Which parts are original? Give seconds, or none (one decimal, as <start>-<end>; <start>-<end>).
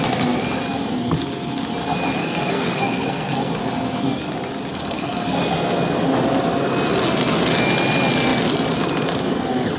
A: 0.0-2.2; 3.7-4.7; 5.4-9.8